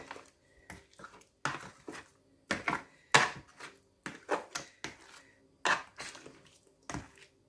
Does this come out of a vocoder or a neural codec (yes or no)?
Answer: no